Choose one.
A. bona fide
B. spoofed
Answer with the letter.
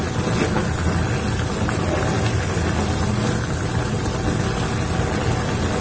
A